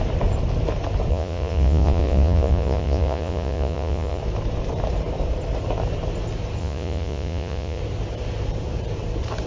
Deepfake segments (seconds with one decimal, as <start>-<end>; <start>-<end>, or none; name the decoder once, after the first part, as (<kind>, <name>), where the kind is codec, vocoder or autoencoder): 1.1-4.2 (vocoder, Vocos); 6.6-7.8